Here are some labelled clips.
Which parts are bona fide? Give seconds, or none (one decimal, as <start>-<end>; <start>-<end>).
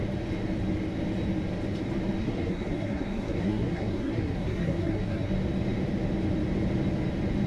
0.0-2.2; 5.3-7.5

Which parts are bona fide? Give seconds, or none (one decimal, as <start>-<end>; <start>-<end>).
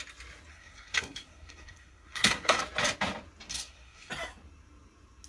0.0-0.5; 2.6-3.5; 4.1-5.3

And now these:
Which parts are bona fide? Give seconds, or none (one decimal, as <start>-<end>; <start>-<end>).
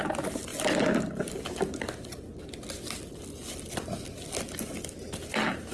0.0-5.7